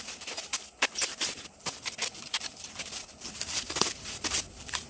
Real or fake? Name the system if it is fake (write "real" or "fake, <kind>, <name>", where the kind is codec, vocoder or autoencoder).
fake, vocoder, BigVGAN v2